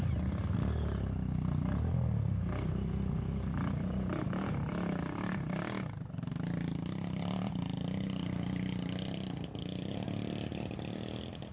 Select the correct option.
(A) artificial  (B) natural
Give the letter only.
B